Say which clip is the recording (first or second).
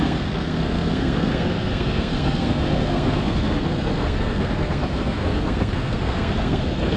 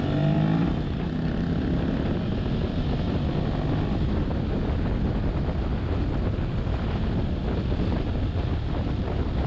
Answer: second